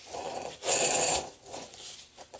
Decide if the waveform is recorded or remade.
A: remade